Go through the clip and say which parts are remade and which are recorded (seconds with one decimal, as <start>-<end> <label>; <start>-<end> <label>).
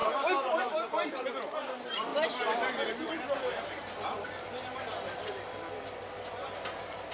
0.0-1.4 remade; 1.4-2.1 recorded; 2.1-4.9 remade; 4.9-7.1 recorded